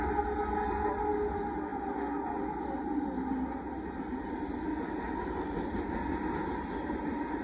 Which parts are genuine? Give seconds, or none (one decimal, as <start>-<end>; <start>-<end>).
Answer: 0.0-7.4